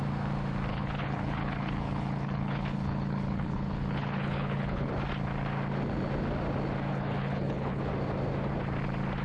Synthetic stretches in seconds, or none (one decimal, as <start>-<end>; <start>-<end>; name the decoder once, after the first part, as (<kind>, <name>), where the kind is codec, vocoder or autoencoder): 0.7-4.9 (codec, HILCodec); 6.9-7.8